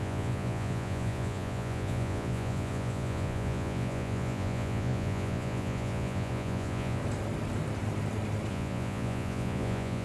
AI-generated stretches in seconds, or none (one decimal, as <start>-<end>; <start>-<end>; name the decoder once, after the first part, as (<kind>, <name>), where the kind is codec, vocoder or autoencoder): 0.0-7.0 (vocoder, Vocos); 8.5-10.0